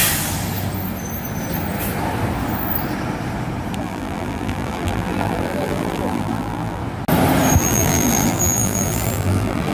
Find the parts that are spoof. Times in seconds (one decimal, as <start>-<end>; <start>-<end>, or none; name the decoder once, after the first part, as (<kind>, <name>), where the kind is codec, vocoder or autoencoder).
3.8-6.8 (vocoder, BigVGAN v2); 7.6-9.7